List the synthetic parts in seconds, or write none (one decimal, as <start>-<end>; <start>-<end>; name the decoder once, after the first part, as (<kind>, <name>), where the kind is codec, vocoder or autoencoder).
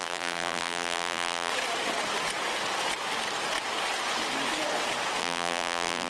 0.0-1.5 (vocoder, BigVGAN v2); 5.2-6.1